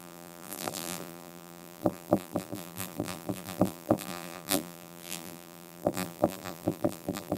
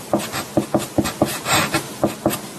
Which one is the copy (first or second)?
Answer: first